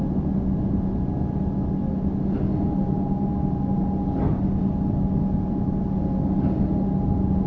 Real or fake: real